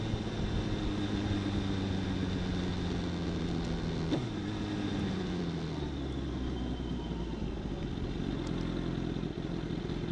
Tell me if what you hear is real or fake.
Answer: real